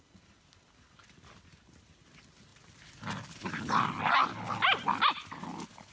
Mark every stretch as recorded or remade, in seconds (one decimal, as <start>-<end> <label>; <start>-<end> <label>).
0.0-5.9 recorded